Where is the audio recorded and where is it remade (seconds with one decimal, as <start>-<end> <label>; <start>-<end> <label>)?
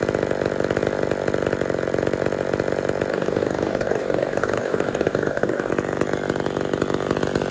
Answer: 0.0-3.1 recorded; 3.1-5.7 remade; 5.7-7.5 recorded